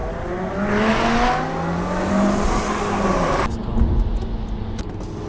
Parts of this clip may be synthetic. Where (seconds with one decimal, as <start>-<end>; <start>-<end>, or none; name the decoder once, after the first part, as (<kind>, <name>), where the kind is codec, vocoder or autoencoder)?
none